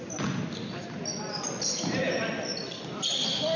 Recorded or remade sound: recorded